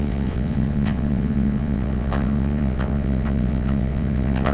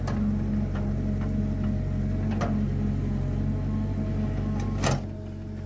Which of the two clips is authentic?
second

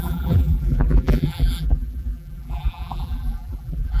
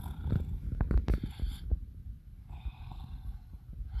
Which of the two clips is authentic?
second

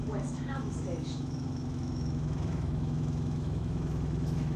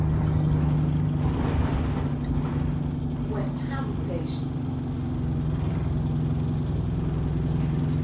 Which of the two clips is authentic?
second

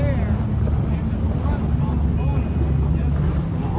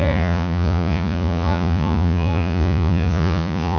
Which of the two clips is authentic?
first